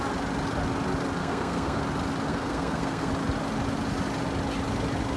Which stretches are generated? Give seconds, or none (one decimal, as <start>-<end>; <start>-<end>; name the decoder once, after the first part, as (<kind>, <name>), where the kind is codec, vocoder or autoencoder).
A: 1.2-1.8 (codec, SNAC); 2.3-3.1